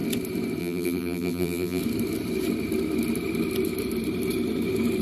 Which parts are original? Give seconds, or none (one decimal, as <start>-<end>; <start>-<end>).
0.0-0.6; 1.8-5.0